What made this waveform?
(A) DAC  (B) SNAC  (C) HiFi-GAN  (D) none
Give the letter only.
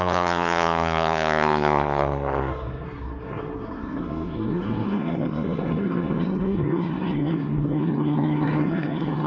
B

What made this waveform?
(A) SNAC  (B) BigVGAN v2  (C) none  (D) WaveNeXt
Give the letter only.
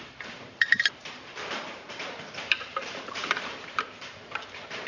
B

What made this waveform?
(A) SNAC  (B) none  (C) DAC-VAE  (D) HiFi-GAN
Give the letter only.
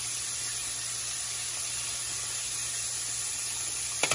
B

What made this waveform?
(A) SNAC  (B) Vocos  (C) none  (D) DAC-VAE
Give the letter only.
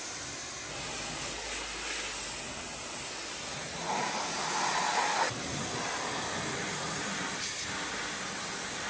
C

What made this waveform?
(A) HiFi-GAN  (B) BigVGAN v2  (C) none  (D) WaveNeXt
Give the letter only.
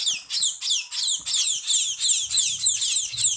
C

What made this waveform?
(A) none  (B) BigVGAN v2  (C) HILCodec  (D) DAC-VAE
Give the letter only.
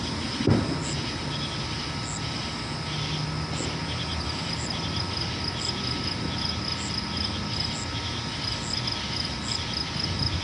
A